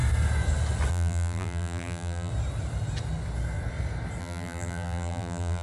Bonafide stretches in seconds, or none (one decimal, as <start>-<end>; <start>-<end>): 0.0-0.9; 2.3-4.2